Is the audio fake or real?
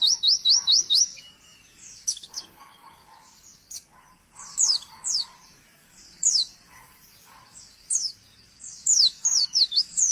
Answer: fake